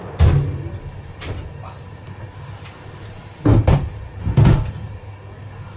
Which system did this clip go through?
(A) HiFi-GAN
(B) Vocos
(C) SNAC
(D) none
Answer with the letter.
D